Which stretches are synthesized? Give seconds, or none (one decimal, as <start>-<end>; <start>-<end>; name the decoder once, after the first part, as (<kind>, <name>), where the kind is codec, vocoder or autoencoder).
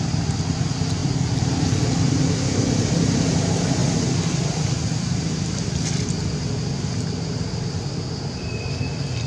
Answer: none